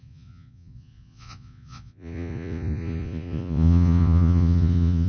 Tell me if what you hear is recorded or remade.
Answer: remade